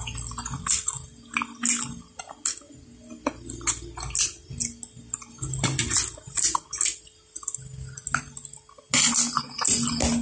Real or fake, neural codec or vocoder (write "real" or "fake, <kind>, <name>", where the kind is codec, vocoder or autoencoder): real